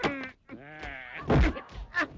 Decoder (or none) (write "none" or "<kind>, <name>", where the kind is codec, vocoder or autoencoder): none